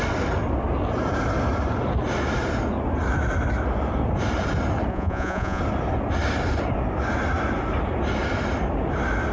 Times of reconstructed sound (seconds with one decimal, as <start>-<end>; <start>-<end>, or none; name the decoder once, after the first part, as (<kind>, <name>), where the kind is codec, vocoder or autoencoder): 4.9-5.6 (vocoder, Vocos)